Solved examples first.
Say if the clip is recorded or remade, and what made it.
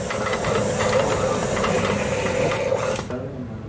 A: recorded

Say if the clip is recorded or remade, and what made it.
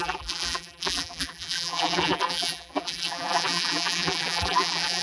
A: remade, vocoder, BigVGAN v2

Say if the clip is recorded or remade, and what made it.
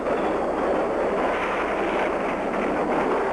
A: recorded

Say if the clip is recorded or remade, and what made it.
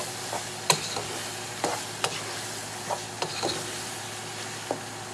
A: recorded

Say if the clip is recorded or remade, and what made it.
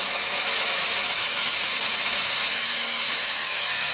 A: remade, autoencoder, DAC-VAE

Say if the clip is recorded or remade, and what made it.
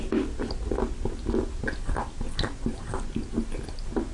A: recorded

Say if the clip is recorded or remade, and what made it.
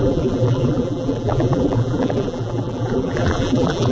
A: remade, vocoder, BigVGAN v2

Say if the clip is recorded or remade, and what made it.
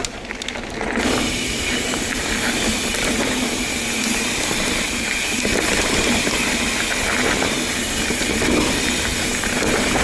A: recorded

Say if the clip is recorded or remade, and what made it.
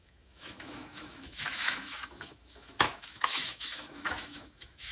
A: remade, autoencoder, DAC-VAE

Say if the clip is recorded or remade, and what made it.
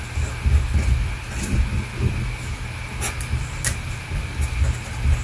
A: recorded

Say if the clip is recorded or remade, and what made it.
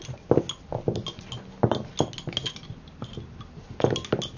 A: recorded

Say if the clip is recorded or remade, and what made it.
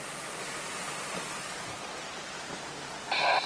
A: recorded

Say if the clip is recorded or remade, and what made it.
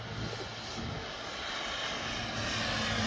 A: recorded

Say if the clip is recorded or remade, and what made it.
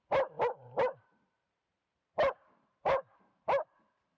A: remade, vocoder, BigVGAN v2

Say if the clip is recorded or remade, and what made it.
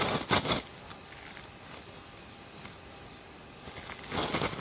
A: recorded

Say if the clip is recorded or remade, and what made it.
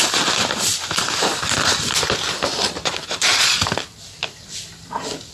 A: remade, vocoder, BigVGAN v2